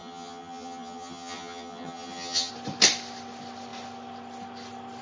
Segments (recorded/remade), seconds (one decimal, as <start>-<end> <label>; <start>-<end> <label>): 0.0-2.5 remade; 2.5-5.0 recorded